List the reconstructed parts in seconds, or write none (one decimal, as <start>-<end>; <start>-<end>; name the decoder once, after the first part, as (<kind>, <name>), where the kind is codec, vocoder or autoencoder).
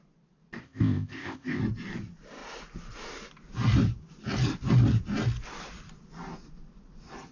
0.6-1.6 (codec, ZipCodec)